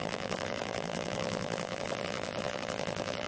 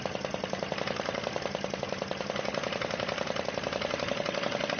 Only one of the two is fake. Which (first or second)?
first